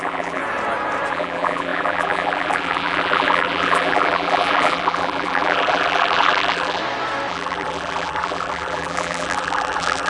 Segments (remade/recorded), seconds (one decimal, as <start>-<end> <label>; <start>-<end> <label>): 0.0-0.4 remade; 0.4-1.1 recorded; 1.1-6.8 remade; 6.8-7.3 recorded; 7.3-10.1 remade